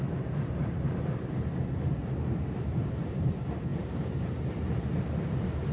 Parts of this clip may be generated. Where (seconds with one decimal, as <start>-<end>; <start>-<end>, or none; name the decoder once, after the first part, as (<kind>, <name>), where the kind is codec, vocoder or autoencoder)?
0.0-5.7 (vocoder, BigVGAN v2)